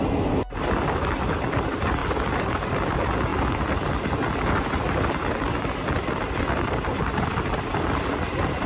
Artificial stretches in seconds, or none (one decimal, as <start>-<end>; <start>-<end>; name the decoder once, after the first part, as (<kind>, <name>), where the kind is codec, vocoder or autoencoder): 2.0-2.8 (vocoder, BigVGAN v2)